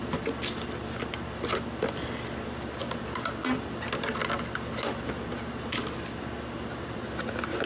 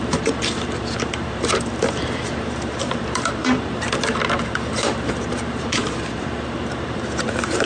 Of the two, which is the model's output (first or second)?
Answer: second